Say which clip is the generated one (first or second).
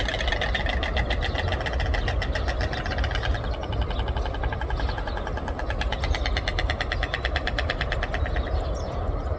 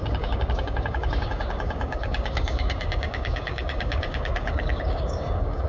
second